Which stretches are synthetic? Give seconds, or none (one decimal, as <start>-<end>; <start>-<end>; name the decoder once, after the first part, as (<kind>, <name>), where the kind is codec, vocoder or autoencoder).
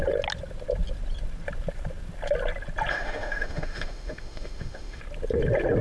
2.9-5.0 (autoencoder, DAC-VAE)